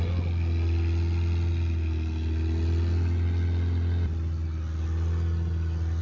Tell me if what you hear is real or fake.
real